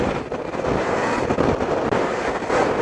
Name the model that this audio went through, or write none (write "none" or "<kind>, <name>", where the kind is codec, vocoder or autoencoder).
vocoder, BigVGAN v2